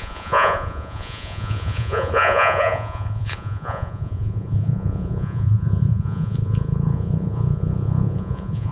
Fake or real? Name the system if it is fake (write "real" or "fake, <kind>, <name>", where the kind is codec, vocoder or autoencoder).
fake, vocoder, Vocos